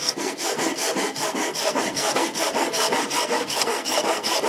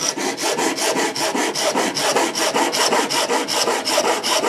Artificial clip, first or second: first